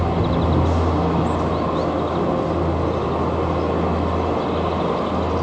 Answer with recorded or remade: recorded